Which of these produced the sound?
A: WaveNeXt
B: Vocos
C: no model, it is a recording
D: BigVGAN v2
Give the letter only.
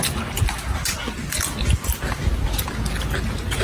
C